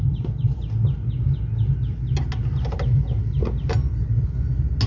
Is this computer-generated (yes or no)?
no